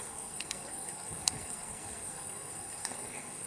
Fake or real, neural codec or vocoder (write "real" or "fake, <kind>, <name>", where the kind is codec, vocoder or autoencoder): fake, codec, SNAC